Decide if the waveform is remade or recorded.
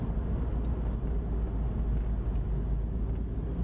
recorded